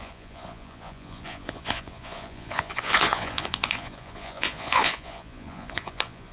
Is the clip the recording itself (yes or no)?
no